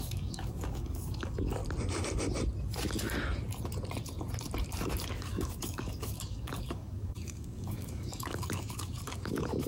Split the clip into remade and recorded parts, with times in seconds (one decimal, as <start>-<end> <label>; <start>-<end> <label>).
0.0-1.6 remade; 1.6-5.1 recorded; 5.1-9.7 remade